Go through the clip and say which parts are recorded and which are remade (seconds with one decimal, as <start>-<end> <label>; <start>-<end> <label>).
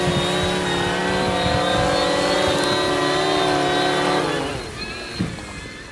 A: 0.0-5.9 recorded